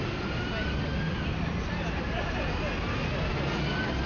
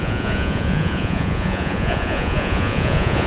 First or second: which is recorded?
first